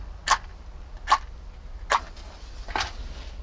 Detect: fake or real real